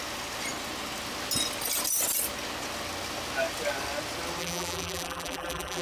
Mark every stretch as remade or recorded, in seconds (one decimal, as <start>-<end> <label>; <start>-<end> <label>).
0.0-4.4 recorded; 4.4-5.8 remade